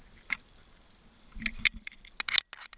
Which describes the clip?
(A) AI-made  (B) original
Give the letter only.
B